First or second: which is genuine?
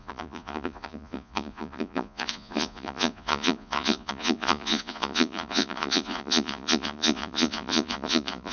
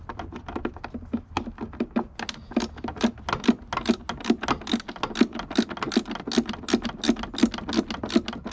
second